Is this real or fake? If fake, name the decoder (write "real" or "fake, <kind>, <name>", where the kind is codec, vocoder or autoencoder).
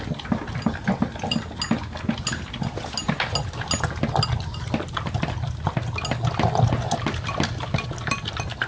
real